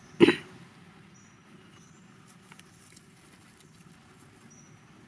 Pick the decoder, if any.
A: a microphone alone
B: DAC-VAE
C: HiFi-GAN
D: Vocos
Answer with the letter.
A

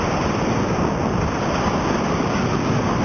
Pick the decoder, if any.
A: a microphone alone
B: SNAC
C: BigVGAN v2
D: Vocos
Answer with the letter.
A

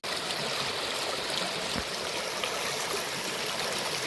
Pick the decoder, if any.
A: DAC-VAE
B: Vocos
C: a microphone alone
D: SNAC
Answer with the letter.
C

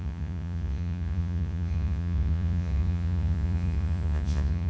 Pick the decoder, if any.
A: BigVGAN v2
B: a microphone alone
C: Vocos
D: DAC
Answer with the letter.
C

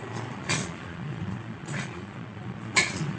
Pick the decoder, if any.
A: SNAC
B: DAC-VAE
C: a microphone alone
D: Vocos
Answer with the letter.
D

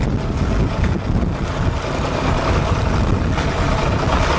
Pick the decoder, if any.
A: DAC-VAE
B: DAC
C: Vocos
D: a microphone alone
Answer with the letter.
D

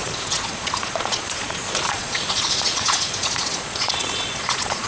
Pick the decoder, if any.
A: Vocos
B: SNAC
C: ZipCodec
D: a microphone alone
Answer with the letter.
A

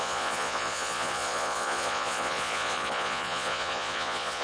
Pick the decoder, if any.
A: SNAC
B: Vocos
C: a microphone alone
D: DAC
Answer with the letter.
B